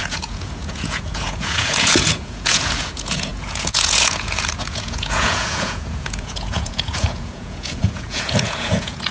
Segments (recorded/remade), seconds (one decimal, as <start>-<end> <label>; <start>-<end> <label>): 0.0-9.1 remade